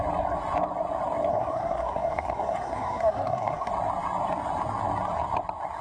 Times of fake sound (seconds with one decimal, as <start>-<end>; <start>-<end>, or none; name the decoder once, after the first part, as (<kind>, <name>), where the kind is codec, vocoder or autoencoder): 1.3-3.7 (codec, SNAC)